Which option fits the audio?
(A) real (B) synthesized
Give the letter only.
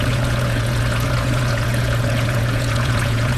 B